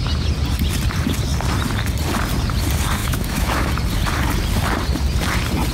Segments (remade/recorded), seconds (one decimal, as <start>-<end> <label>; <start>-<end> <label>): 0.0-3.0 recorded; 3.0-3.7 remade; 3.7-5.7 recorded